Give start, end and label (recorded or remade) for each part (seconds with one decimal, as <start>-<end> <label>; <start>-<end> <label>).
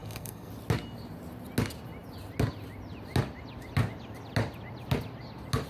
0.0-0.5 remade; 0.5-5.7 recorded